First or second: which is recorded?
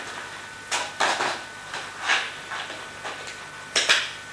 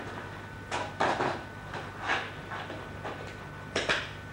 first